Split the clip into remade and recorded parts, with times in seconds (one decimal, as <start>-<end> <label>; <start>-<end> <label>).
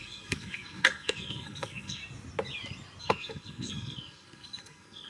0.0-2.0 remade; 2.0-3.0 recorded; 3.0-5.1 remade